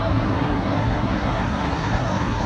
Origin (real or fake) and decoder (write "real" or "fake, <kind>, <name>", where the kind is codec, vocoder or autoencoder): fake, codec, SNAC